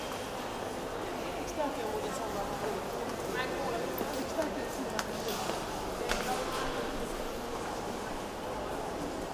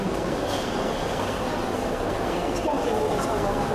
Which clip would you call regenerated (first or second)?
second